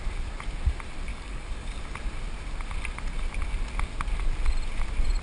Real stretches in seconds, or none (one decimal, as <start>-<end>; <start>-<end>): 0.0-1.1; 1.8-5.2